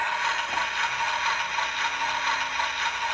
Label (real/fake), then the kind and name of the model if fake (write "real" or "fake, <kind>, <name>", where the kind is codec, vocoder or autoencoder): real